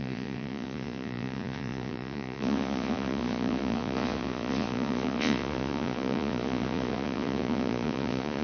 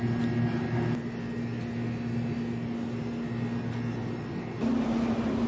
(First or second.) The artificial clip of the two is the first